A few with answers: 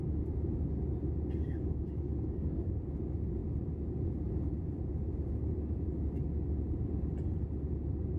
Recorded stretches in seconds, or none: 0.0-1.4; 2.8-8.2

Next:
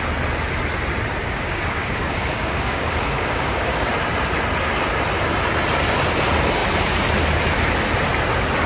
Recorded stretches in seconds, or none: 0.0-1.2; 3.9-8.7

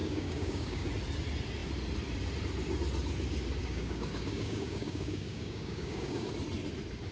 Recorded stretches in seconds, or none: 0.9-3.6; 6.3-7.1

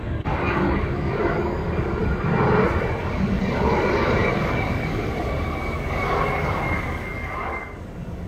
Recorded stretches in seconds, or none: 2.0-3.0

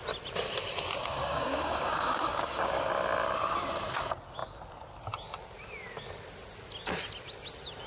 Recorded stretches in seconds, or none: 0.0-1.2; 2.9-7.9